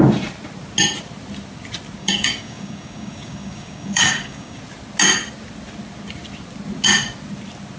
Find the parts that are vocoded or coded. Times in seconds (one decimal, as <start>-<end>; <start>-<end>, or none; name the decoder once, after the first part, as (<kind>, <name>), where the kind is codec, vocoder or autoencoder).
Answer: 2.0-4.6 (codec, DAC)